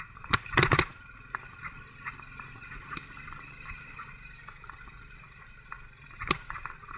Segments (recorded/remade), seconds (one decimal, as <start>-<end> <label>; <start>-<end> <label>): 0.0-7.0 recorded